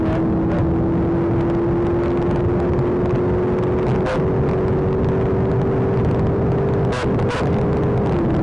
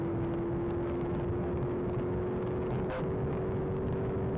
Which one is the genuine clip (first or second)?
first